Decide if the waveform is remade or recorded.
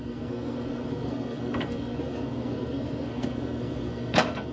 remade